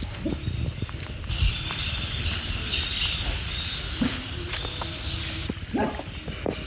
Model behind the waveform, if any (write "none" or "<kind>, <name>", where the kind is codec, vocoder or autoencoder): none